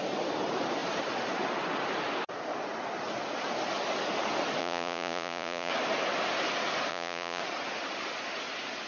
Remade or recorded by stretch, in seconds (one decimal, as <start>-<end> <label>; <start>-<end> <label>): 0.0-4.6 recorded; 4.6-5.7 remade; 5.7-6.9 recorded; 6.9-7.4 remade; 7.4-8.9 recorded